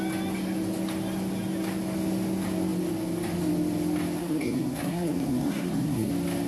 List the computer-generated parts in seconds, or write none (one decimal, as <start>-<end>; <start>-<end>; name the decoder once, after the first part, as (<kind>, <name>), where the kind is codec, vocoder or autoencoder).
4.2-6.1 (codec, SNAC)

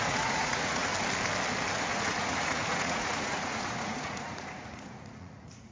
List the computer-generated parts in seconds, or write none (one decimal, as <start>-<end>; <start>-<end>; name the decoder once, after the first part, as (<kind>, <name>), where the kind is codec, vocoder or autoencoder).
0.0-0.9 (vocoder, Vocos); 1.9-5.7